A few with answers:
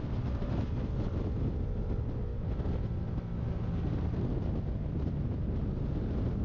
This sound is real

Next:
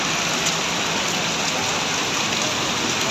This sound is real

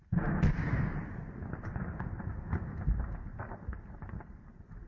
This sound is real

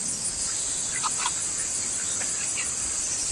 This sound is fake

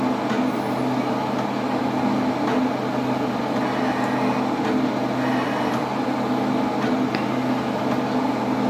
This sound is real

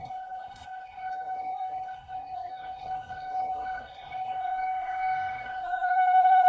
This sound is fake